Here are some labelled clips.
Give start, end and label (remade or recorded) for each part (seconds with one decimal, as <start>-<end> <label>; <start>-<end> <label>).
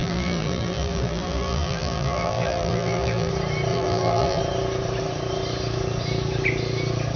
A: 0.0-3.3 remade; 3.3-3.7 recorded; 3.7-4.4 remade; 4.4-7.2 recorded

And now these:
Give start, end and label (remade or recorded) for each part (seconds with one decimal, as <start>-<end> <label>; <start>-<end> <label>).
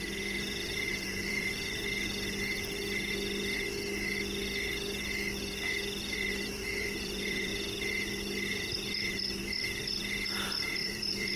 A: 0.0-1.8 remade; 1.8-6.0 recorded; 6.0-7.5 remade; 7.5-8.5 recorded; 8.5-9.4 remade; 9.4-10.7 recorded; 10.7-11.4 remade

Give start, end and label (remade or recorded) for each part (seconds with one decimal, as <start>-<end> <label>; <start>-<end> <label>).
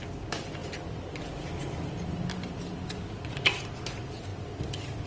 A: 0.0-4.3 remade; 4.3-5.1 recorded